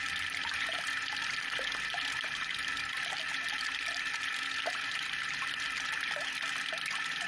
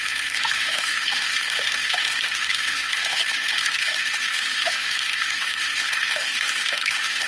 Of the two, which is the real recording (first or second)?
first